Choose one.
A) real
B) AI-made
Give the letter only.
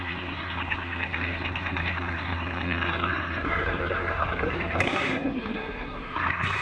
B